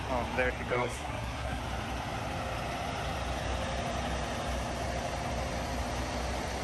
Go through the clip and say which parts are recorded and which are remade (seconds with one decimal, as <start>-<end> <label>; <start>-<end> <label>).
0.0-0.7 recorded; 0.7-1.6 remade; 1.6-6.6 recorded

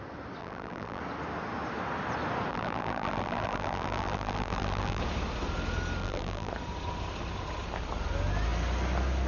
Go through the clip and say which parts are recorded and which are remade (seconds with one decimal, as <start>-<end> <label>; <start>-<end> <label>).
0.0-0.4 recorded; 0.4-1.0 remade; 1.0-2.5 recorded; 2.5-5.0 remade; 5.0-6.0 recorded; 6.0-6.5 remade; 6.5-9.3 recorded

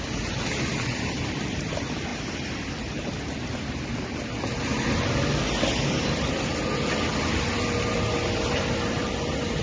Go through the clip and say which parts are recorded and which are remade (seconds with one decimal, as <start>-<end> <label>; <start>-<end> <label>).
0.0-2.1 remade; 2.1-4.9 recorded; 4.9-6.5 remade; 6.5-9.0 recorded; 9.0-9.6 remade

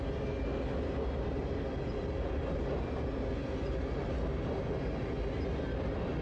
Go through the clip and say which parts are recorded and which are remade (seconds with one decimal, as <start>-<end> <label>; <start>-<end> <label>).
0.0-6.2 recorded

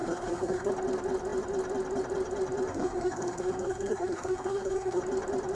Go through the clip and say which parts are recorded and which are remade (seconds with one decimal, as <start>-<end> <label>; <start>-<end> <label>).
0.0-0.7 remade; 0.7-2.7 recorded; 2.7-5.0 remade; 5.0-5.6 recorded

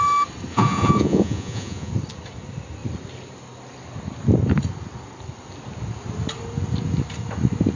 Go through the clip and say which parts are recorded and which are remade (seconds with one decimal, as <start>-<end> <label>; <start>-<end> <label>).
0.0-0.5 recorded; 0.5-1.9 remade; 1.9-7.8 recorded

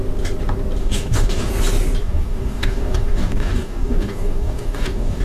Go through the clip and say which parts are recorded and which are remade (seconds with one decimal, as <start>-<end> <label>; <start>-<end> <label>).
0.0-0.8 recorded; 0.8-1.5 remade; 1.5-2.0 recorded; 2.0-5.2 remade